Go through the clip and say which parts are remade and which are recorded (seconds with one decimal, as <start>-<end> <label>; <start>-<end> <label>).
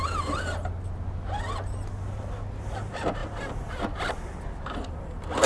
0.0-5.5 recorded